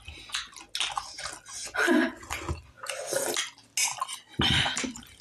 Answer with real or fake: real